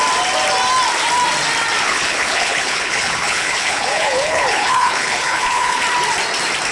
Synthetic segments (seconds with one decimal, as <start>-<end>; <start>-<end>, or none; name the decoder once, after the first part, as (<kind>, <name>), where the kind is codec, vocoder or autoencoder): 1.8-5.8 (codec, HILCodec)